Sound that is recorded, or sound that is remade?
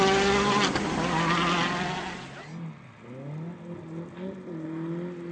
recorded